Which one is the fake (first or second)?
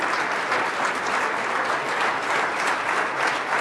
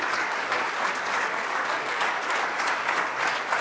second